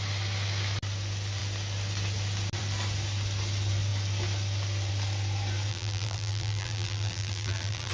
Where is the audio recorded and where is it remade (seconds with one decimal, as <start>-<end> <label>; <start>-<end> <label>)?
0.0-5.7 recorded; 5.7-7.9 remade